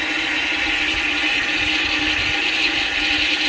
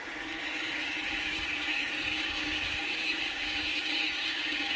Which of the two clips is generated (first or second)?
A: second